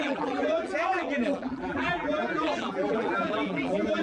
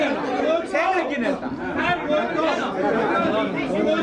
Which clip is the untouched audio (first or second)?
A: second